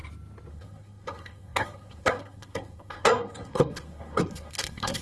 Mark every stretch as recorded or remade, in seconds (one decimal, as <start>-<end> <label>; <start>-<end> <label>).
0.0-0.5 recorded; 0.5-5.0 remade